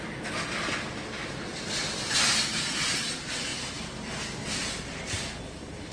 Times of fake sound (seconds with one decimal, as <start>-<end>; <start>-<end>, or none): none